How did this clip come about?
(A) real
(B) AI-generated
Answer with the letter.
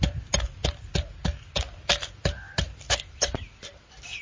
A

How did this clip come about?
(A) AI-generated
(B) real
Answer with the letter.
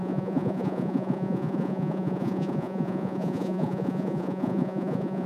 A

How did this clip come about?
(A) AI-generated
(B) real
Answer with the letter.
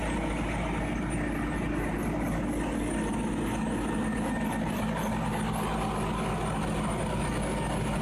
B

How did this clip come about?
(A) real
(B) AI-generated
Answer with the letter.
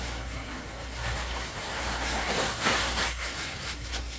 B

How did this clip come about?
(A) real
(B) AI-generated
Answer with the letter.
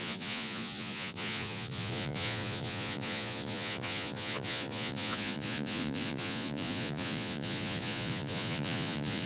B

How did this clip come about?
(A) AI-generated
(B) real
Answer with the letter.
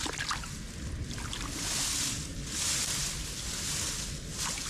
B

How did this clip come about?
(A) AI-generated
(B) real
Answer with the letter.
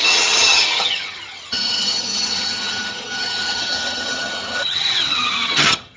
A